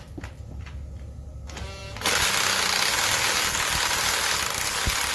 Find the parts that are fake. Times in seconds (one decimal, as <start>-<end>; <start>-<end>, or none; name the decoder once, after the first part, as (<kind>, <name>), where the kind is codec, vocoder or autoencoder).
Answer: none